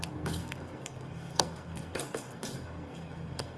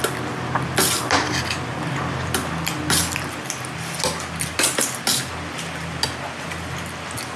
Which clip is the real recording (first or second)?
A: second